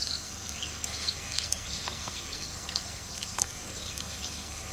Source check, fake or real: fake